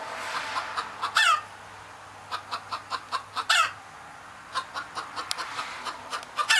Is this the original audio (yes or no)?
yes